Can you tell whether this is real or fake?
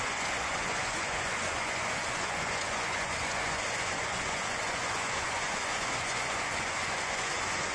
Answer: fake